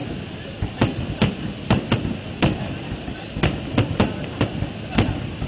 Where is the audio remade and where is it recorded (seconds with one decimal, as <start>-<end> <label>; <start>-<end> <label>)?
0.0-5.5 recorded